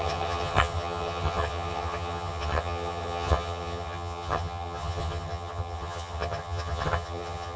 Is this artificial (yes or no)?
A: yes